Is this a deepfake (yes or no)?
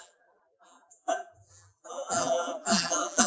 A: yes